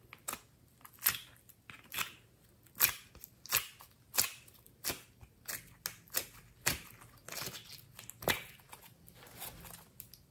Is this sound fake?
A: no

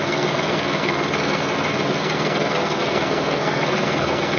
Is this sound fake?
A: yes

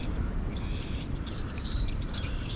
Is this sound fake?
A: yes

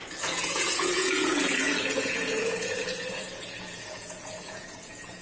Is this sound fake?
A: yes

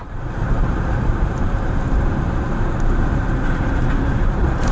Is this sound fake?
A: yes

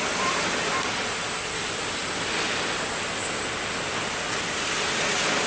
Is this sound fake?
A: no